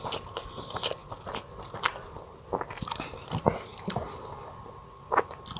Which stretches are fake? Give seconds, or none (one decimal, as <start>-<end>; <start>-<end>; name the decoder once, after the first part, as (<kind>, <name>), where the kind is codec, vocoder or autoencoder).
0.0-3.7 (vocoder, BigVGAN v2); 5.0-5.6